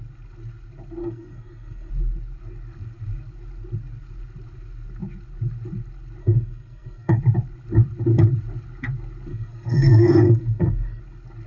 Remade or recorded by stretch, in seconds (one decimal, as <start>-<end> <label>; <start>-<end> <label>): 0.0-1.0 recorded; 1.0-1.9 remade; 1.9-6.2 recorded; 6.2-7.2 remade; 7.2-9.3 recorded; 9.3-11.0 remade; 11.0-11.5 recorded